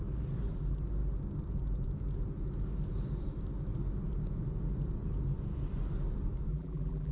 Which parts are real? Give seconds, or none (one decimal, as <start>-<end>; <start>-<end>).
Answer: 0.0-6.5